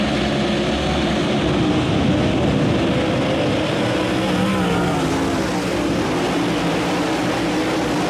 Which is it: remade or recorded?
recorded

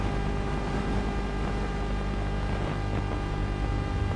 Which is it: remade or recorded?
recorded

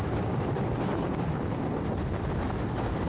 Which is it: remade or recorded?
remade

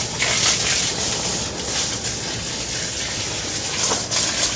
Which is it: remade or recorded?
recorded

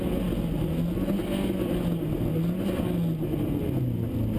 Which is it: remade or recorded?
recorded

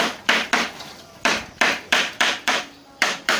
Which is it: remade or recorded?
remade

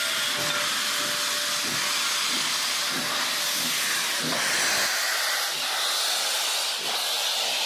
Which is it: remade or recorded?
recorded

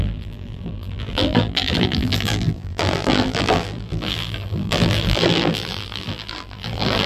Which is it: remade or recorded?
remade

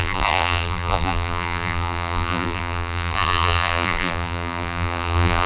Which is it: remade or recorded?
remade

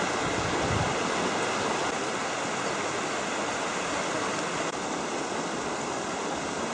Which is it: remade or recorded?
recorded